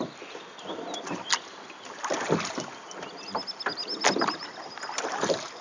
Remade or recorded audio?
recorded